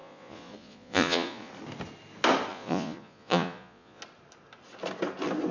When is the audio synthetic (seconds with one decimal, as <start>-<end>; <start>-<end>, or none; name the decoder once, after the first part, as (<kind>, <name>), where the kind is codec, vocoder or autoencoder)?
0.0-1.5 (vocoder, Vocos); 2.5-4.0